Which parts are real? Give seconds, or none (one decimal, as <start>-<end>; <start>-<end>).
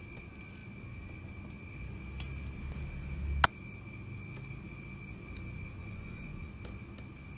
0.0-5.8; 6.5-7.4